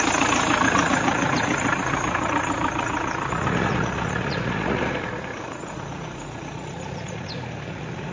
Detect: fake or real fake